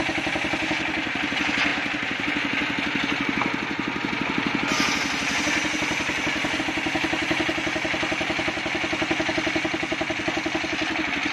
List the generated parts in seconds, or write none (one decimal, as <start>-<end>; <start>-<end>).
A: none